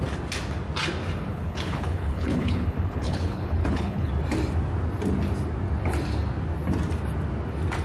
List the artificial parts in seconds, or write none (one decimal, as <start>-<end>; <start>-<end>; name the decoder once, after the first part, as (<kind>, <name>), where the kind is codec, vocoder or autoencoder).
1.3-4.1 (codec, HILCodec)